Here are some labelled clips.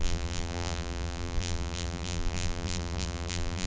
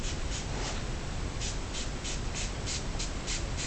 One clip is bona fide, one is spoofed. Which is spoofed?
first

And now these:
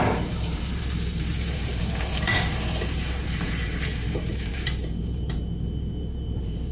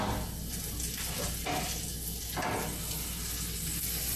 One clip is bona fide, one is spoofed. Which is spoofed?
first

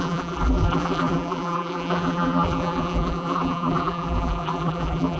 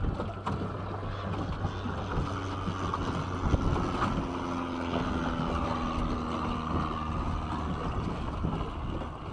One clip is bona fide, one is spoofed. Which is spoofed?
first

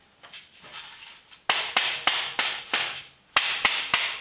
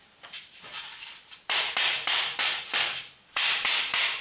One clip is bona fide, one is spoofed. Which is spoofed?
second